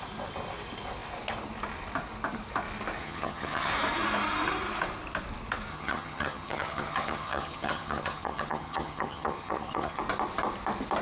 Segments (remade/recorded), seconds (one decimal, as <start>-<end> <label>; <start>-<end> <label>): 0.0-3.0 recorded; 3.0-3.7 remade; 3.7-5.7 recorded; 5.7-10.0 remade; 10.0-11.0 recorded